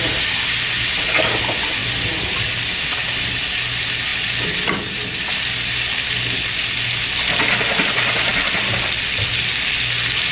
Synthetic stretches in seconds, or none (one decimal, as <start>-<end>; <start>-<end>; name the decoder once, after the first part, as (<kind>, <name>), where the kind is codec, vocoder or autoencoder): none

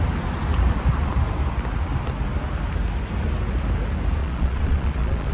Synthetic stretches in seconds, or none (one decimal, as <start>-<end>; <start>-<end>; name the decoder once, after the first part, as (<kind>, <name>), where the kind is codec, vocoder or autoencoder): 4.2-5.3 (vocoder, Vocos)